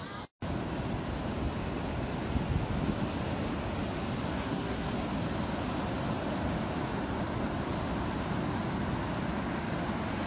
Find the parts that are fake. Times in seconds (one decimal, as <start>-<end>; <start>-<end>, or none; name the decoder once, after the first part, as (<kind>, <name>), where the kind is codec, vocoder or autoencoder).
4.3-4.9 (codec, SNAC)